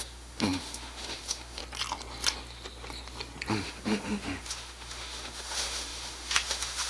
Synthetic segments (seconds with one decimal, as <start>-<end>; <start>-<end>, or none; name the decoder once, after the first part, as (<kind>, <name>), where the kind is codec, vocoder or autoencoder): 0.0-1.6 (autoencoder, DAC-VAE); 3.5-6.9